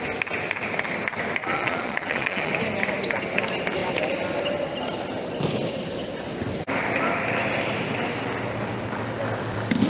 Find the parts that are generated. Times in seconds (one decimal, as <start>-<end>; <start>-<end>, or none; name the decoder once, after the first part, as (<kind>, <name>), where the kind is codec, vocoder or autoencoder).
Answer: 1.4-2.5 (vocoder, Vocos)